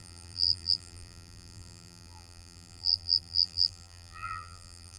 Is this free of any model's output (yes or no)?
no